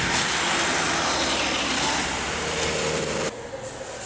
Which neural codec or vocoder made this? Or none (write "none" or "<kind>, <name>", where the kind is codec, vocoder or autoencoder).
none